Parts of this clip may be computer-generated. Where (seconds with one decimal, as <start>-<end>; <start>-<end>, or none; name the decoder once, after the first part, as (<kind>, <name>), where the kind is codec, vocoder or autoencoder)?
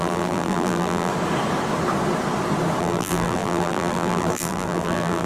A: 0.0-1.1 (vocoder, BigVGAN v2); 2.8-5.2